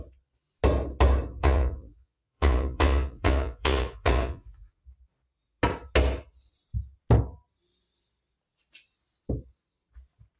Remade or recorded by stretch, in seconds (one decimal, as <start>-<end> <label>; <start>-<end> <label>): 0.0-1.4 recorded; 1.4-4.8 remade; 4.8-10.4 recorded